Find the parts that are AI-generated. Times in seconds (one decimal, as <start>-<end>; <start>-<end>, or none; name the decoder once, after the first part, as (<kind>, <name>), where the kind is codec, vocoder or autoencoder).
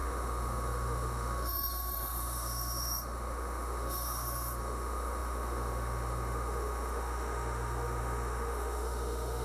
0.0-9.4 (autoencoder, DAC-VAE)